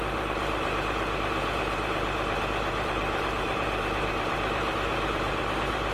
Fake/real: fake